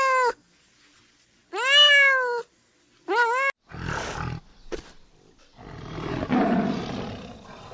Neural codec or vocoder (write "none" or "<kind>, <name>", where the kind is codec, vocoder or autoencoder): none